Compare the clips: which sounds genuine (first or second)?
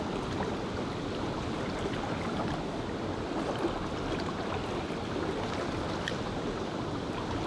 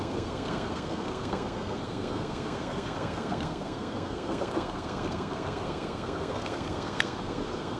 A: first